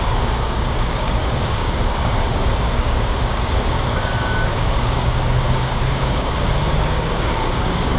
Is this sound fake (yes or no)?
yes